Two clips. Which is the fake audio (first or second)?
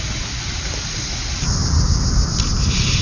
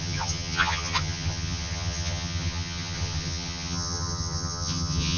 second